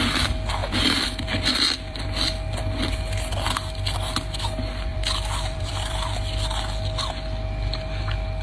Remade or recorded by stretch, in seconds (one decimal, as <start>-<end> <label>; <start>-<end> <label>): 0.0-0.6 recorded; 0.6-2.3 remade; 2.3-4.9 recorded; 4.9-6.2 remade; 6.2-8.4 recorded